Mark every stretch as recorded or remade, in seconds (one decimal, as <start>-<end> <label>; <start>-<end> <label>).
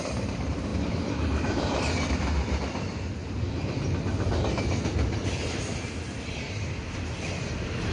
0.0-7.9 remade